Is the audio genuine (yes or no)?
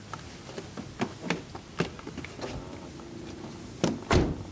yes